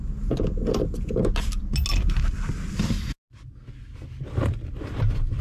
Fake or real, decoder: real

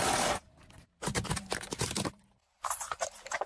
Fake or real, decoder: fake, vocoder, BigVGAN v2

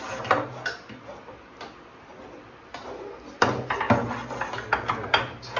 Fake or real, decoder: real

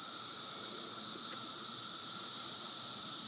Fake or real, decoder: fake, vocoder, BigVGAN v2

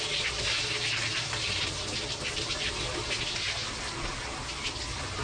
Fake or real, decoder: real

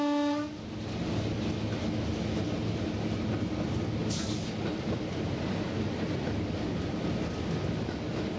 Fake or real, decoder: real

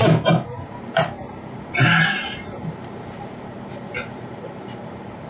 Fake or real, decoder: fake, vocoder, BigVGAN v2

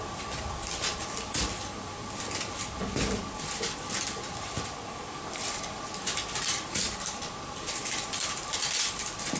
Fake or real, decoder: fake, vocoder, BigVGAN v2